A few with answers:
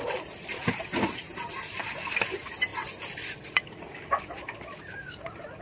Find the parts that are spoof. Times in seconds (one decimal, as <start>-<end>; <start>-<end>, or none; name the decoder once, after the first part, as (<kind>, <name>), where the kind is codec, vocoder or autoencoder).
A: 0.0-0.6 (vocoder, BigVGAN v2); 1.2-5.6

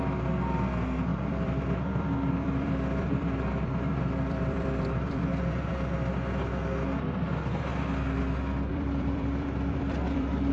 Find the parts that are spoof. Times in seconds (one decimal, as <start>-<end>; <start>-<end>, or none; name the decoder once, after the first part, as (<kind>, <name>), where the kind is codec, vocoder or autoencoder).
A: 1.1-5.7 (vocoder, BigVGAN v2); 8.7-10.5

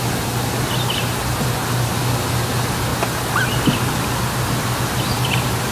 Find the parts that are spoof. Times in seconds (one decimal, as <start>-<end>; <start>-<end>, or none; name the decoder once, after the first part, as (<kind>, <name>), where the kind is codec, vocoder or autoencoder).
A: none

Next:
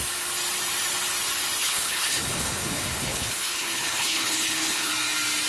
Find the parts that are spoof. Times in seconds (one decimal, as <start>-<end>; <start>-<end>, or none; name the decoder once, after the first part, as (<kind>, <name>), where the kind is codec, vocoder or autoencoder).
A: 1.6-4.9 (codec, HILCodec)